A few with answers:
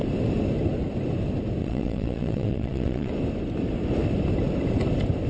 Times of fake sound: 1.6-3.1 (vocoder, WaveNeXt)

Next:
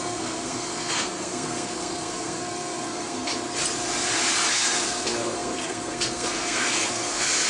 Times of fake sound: 0.0-3.3 (codec, SNAC); 4.5-7.5

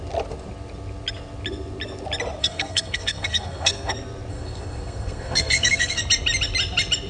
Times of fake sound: 2.4-3.9 (codec, SNAC); 4.3-6.0

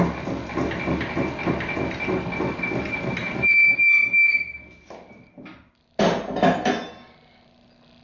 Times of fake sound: none

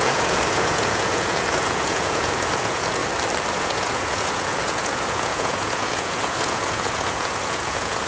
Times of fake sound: 0.0-3.0 (vocoder, Vocos); 3.5-8.1